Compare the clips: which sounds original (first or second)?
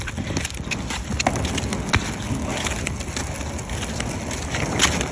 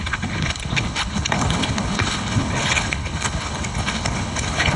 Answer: first